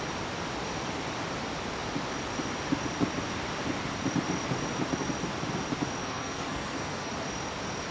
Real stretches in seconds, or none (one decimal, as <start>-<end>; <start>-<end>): 0.0-6.0; 7.1-7.9